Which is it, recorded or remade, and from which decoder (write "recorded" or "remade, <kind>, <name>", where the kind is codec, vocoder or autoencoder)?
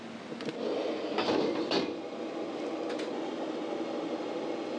recorded